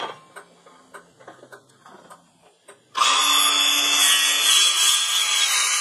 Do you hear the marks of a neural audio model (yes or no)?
no